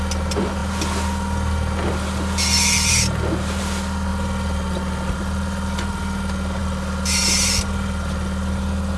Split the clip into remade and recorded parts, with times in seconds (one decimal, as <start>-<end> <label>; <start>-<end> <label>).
0.0-9.0 recorded